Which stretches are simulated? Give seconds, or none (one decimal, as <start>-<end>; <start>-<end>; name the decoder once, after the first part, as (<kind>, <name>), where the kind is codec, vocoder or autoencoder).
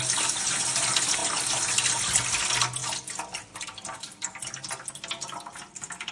none